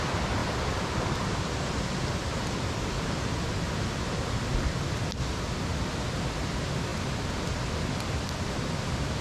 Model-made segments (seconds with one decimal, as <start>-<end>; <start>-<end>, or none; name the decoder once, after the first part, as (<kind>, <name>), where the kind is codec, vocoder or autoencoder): none